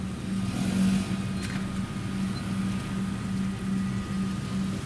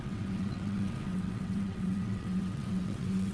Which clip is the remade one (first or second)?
second